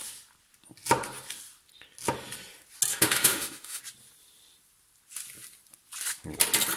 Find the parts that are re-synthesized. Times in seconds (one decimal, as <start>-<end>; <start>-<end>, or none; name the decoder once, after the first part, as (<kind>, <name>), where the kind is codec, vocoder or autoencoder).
2.9-3.8 (autoencoder, DAC-VAE)